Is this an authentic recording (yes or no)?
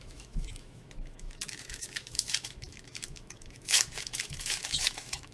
no